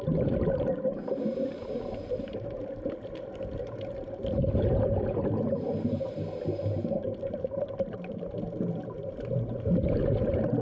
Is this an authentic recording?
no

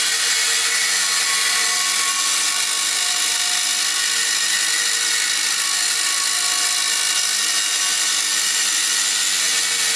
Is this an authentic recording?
yes